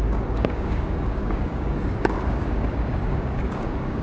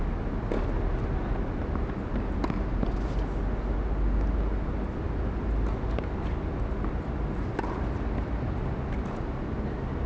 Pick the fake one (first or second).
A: first